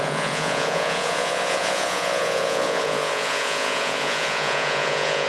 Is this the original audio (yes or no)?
no